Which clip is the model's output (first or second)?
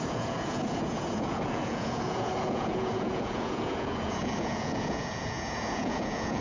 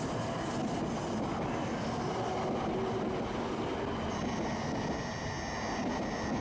first